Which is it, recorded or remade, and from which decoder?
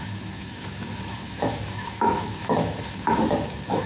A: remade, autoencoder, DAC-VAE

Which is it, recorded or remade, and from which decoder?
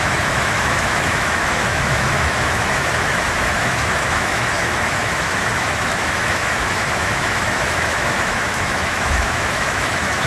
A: remade, autoencoder, DAC-VAE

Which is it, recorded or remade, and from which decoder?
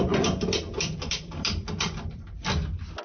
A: recorded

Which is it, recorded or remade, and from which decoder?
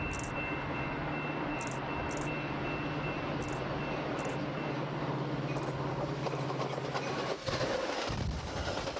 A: recorded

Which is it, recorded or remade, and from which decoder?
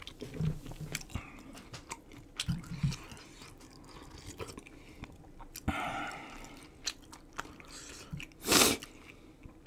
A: recorded